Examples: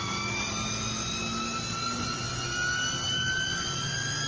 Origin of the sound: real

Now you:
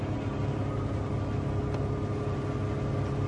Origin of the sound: real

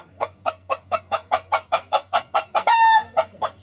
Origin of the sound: fake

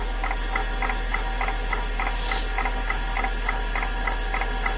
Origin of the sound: real